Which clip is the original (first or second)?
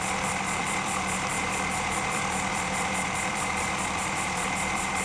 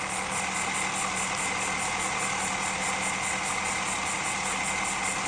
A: second